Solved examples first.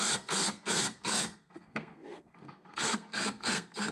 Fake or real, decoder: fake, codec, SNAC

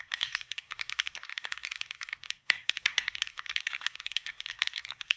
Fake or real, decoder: fake, codec, SNAC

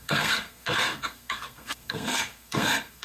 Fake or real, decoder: fake, codec, SNAC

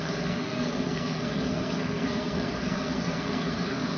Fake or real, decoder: fake, codec, SNAC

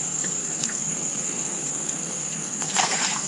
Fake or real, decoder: fake, codec, SNAC